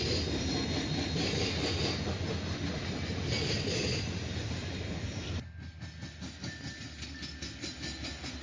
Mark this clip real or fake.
real